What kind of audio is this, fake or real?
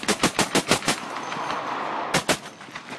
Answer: real